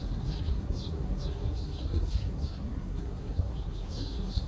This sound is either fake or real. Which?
fake